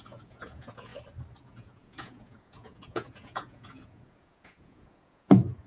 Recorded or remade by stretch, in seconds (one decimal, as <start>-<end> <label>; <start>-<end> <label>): 0.0-0.9 remade; 0.9-1.4 recorded; 1.4-5.7 remade